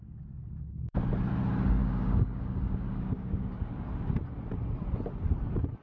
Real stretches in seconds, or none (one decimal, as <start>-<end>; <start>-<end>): 0.0-1.8; 3.6-5.8